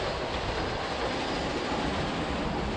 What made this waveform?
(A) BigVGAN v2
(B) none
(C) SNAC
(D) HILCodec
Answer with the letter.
B